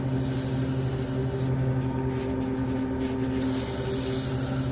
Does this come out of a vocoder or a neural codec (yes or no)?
no